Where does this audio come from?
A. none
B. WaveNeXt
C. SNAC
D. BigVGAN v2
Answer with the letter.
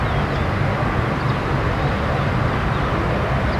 A